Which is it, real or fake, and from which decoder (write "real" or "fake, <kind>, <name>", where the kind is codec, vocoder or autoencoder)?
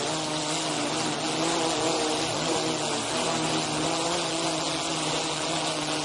real